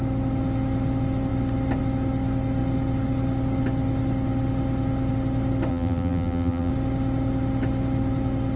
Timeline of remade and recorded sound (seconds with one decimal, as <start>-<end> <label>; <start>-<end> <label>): 0.0-5.7 recorded; 5.7-6.7 remade; 6.7-8.6 recorded